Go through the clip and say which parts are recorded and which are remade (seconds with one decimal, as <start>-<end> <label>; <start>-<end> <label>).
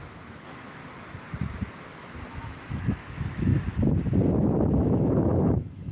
0.0-0.8 remade; 0.8-2.3 recorded; 2.3-3.5 remade; 3.5-5.1 recorded; 5.1-5.9 remade